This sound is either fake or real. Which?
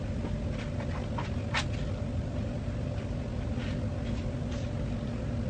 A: real